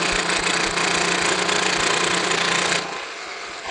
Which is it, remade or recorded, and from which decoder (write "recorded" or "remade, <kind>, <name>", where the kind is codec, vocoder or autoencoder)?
recorded